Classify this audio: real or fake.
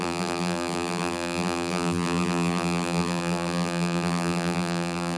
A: fake